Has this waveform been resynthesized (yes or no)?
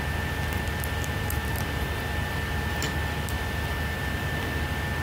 no